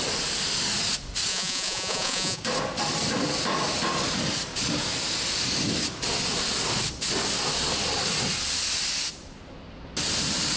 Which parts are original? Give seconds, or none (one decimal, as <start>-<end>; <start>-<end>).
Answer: 0.0-1.3; 2.4-10.6